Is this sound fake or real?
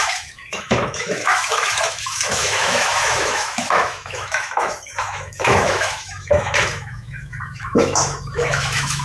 fake